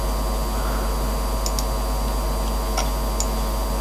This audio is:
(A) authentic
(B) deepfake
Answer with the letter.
A